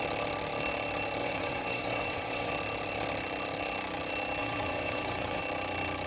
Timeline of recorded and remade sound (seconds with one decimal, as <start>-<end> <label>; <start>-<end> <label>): 0.0-1.2 recorded; 1.2-2.5 remade; 2.5-4.4 recorded; 4.4-5.4 remade; 5.4-6.1 recorded